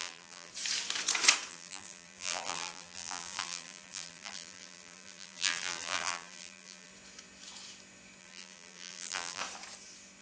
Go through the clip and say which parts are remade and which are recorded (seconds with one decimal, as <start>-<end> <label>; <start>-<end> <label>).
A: 0.0-0.5 remade; 0.5-1.5 recorded; 1.5-6.9 remade; 6.9-8.2 recorded; 8.2-9.4 remade; 9.4-10.2 recorded